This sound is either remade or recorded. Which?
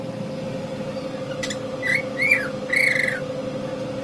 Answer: recorded